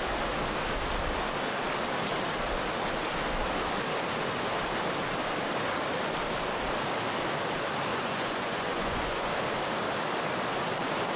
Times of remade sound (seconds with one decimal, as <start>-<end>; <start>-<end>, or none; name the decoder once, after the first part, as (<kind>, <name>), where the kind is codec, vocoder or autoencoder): 7.9-9.3 (vocoder, Vocos)